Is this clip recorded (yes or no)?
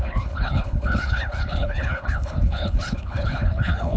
no